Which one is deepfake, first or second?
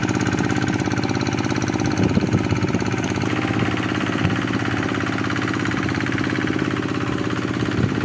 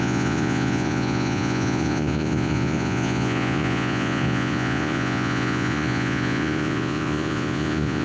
second